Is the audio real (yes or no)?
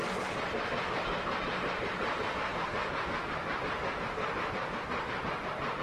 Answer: yes